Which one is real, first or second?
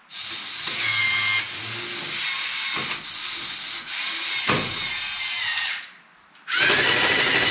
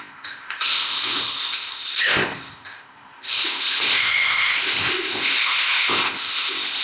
first